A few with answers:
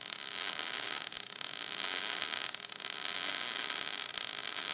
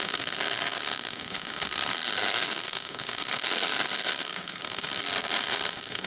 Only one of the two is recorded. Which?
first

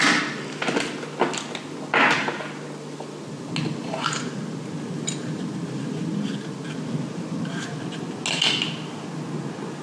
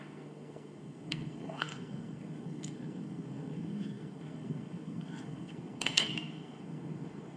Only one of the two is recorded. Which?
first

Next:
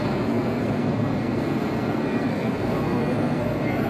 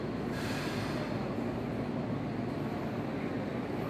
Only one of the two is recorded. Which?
second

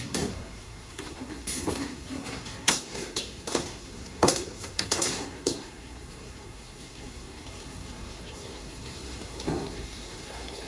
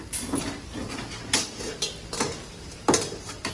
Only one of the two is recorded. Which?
second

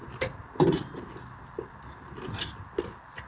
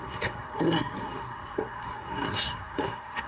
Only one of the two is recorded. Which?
first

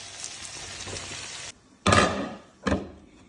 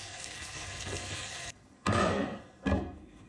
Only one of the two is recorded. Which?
first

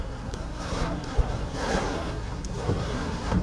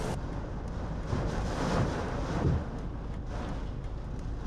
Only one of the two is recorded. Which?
second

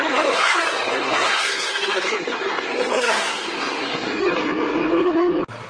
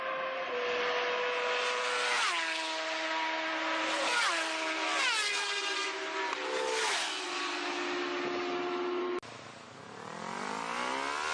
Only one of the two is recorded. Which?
second